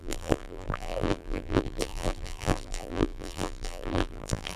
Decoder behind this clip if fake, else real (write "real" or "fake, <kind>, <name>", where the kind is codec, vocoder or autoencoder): fake, vocoder, BigVGAN v2